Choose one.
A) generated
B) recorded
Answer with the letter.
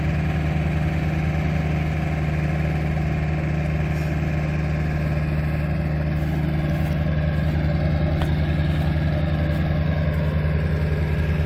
B